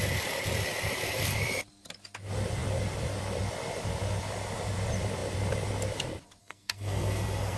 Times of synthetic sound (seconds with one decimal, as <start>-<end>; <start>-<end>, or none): 6.4-7.6